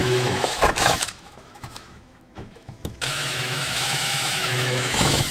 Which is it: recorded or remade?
remade